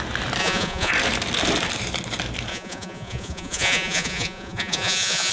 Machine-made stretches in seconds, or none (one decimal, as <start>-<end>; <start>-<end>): 0.4-0.9; 2.5-5.3